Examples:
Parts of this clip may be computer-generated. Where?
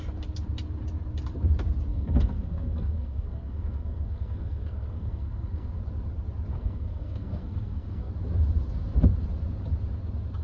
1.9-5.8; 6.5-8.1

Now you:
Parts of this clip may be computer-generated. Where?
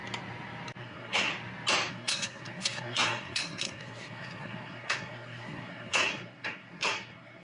0.8-1.3; 1.9-7.4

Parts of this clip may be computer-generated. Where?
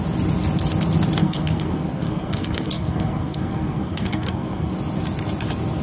1.2-4.7